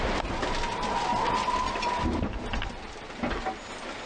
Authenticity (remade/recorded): recorded